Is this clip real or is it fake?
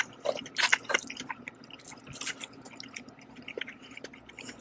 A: real